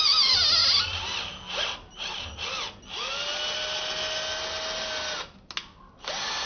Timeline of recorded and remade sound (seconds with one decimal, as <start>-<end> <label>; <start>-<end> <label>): 0.0-6.5 recorded